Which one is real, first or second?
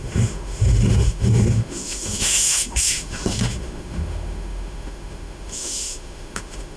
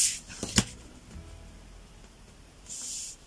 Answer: second